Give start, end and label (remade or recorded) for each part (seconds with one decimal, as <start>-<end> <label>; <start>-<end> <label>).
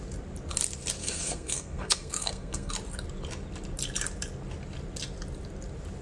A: 0.0-1.0 recorded; 1.0-2.7 remade; 2.7-6.0 recorded